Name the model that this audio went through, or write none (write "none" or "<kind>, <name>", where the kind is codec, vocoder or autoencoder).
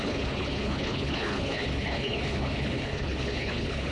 codec, HILCodec